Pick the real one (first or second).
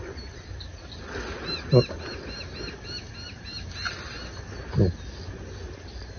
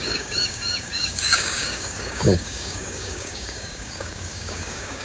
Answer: first